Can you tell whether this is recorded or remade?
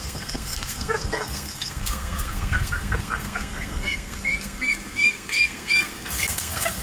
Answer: remade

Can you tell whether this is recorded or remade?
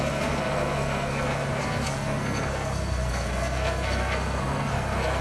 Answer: remade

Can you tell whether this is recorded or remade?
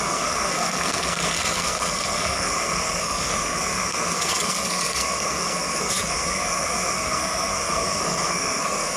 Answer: remade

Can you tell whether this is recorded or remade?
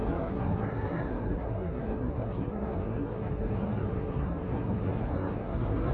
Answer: remade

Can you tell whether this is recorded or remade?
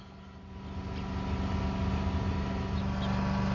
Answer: recorded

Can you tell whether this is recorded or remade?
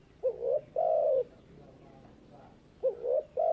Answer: recorded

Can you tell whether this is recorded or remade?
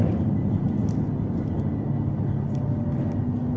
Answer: recorded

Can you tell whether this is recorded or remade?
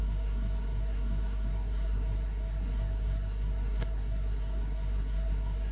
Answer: remade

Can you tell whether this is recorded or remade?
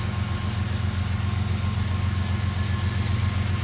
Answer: recorded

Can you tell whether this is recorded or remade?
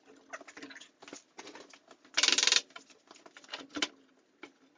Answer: recorded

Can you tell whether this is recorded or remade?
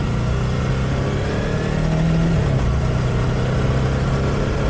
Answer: recorded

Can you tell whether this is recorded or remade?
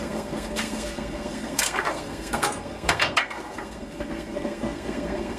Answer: remade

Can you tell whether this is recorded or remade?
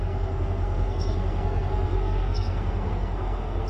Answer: remade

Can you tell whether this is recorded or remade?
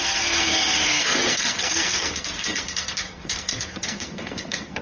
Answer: remade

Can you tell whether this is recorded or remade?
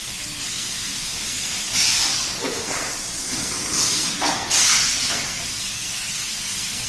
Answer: remade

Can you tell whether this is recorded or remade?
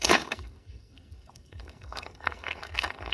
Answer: remade